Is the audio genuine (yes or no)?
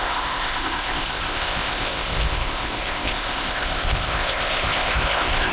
no